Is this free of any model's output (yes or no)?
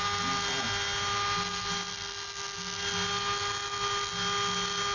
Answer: yes